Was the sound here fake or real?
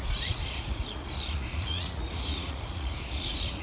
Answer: fake